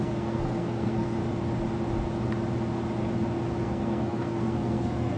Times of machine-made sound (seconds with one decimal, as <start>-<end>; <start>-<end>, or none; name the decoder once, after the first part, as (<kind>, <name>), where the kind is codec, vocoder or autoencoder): 0.0-1.2 (codec, SNAC); 3.6-5.2